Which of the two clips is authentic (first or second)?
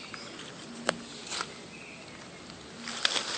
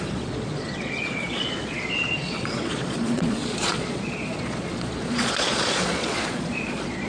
first